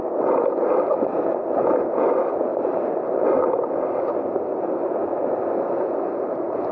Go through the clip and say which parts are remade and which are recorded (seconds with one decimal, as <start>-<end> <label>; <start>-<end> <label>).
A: 0.0-6.7 recorded